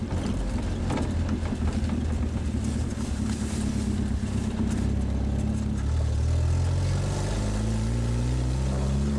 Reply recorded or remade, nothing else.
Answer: recorded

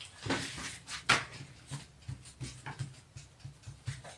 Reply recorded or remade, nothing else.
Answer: recorded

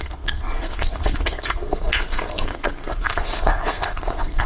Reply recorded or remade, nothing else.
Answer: remade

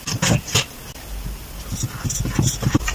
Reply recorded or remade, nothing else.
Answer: recorded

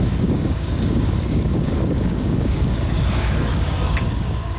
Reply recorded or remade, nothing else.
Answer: remade